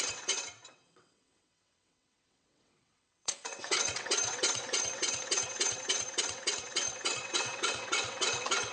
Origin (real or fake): fake